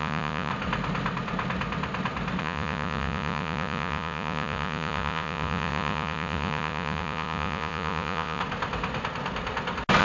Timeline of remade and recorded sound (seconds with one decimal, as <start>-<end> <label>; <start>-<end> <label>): 0.0-0.5 remade; 0.5-2.4 recorded; 2.4-8.4 remade; 8.4-10.0 recorded